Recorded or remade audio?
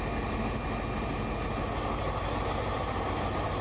recorded